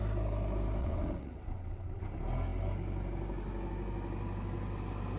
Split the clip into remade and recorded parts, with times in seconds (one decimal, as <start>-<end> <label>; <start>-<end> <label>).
0.0-0.8 recorded; 0.8-2.0 remade; 2.0-5.2 recorded